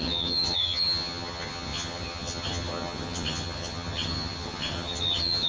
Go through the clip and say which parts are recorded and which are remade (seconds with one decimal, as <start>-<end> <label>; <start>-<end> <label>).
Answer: 0.0-5.5 remade